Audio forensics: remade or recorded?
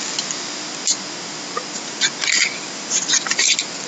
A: recorded